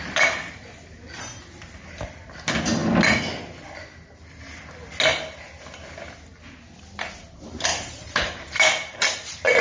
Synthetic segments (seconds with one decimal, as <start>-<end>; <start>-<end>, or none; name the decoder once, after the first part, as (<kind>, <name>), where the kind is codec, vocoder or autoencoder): 7.7-9.6 (vocoder, BigVGAN v2)

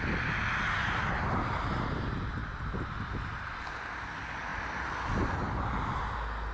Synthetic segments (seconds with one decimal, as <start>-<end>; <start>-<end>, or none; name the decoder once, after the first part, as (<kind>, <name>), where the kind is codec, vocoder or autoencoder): none

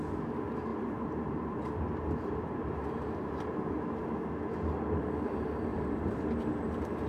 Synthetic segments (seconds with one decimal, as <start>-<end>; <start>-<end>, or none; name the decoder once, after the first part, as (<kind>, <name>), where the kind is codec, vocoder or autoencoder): 0.7-3.7 (vocoder, BigVGAN v2); 5.7-6.2

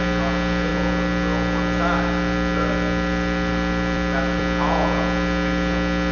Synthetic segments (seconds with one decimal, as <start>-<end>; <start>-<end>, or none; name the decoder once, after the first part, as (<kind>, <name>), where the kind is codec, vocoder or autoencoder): 0.7-4.4 (vocoder, BigVGAN v2)